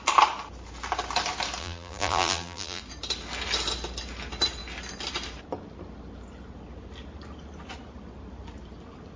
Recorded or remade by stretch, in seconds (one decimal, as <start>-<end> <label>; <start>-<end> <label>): 0.0-1.6 recorded; 1.6-2.8 remade; 2.8-9.2 recorded